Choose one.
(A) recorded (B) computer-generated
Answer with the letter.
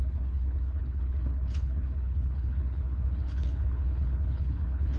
B